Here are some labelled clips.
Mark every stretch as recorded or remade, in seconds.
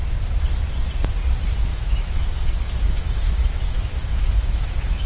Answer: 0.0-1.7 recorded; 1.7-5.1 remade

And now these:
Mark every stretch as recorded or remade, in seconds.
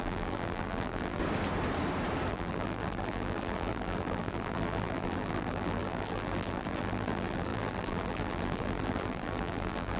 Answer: 0.0-1.2 remade; 1.2-2.3 recorded; 2.3-10.0 remade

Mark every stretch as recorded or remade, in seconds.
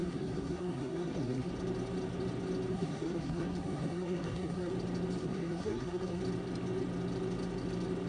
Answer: 0.0-1.5 remade; 1.5-2.7 recorded; 2.7-4.7 remade; 4.7-5.2 recorded; 5.2-6.2 remade; 6.2-8.1 recorded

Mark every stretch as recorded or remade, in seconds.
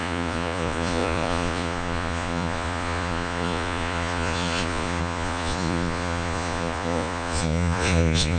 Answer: 0.0-8.4 remade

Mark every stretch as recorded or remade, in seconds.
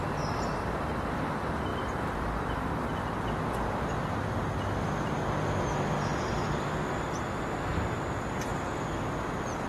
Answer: 0.0-0.4 recorded; 0.4-1.2 remade; 1.2-1.7 recorded; 1.7-3.9 remade; 3.9-6.1 recorded; 6.1-6.9 remade; 6.9-8.5 recorded; 8.5-9.7 remade